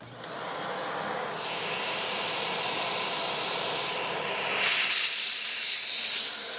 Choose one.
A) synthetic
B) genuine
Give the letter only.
B